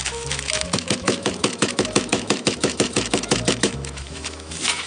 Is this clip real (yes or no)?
no